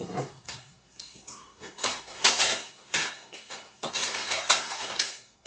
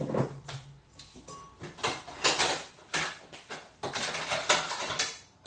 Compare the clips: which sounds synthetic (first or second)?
first